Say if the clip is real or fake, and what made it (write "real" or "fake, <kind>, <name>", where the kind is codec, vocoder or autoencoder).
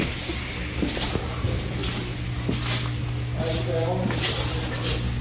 real